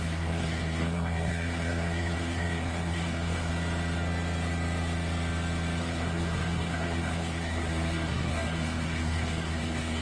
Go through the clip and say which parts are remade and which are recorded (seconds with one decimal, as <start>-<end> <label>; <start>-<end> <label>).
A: 0.0-3.5 remade; 3.5-5.8 recorded; 5.8-10.0 remade